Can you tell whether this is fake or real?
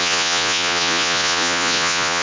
fake